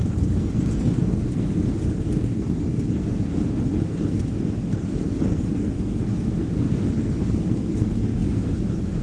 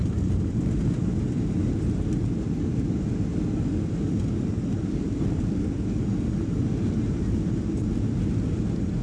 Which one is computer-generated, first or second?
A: first